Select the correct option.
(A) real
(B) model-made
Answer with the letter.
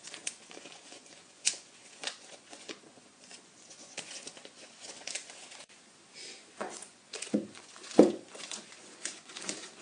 B